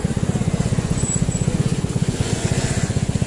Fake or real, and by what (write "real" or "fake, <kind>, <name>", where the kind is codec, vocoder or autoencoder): fake, vocoder, Vocos